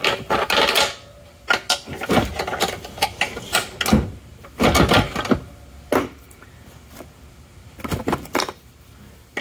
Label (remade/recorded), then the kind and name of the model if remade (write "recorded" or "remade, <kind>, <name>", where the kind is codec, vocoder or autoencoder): recorded